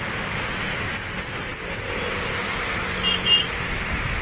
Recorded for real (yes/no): yes